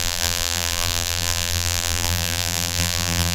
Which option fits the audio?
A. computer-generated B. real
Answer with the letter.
A